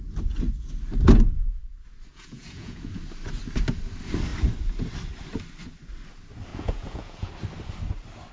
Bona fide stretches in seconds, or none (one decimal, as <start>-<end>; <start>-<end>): 0.0-2.1; 2.9-6.5; 7.3-8.3